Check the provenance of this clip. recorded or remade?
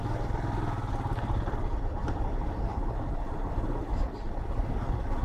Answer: recorded